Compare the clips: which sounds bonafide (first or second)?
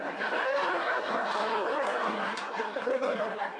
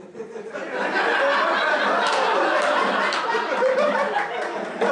second